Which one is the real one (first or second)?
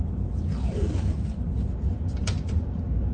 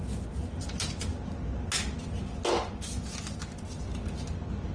second